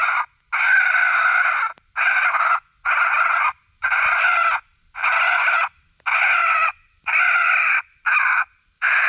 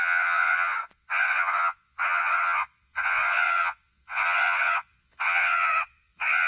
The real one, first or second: first